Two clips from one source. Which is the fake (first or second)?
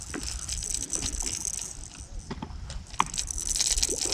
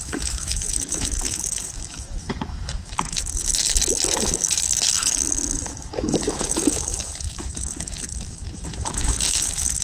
second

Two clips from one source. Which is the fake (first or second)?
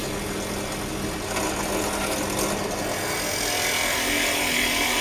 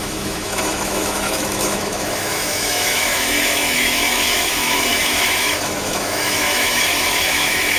second